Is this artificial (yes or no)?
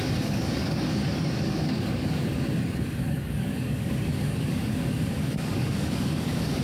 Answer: yes